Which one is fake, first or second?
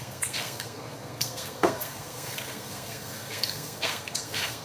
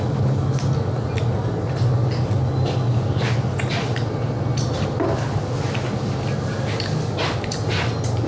first